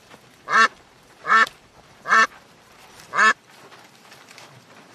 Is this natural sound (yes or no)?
no